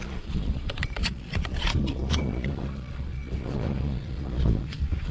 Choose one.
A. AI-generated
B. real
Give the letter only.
A